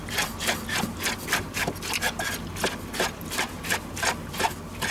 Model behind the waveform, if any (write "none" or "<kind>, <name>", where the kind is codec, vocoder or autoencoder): none